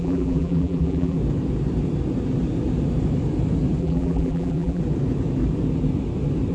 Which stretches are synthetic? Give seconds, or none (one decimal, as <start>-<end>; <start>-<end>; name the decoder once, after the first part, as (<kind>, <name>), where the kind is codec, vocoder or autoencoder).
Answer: 0.0-1.2 (vocoder, BigVGAN v2); 3.8-4.8